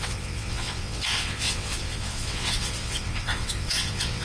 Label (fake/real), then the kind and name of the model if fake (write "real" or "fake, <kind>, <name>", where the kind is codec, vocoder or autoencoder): fake, vocoder, WaveNeXt